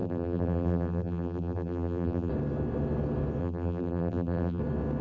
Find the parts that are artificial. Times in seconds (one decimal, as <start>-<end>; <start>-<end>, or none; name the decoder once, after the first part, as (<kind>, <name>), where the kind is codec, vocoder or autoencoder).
0.0-2.3 (vocoder, BigVGAN v2); 3.4-4.6